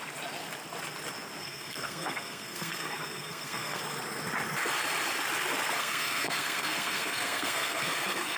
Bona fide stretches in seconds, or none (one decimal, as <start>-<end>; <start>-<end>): 0.0-1.4; 3.8-5.8